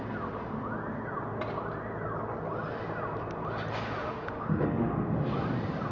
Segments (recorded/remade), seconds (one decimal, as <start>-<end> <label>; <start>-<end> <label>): 0.0-4.0 recorded; 4.0-5.3 remade; 5.3-5.9 recorded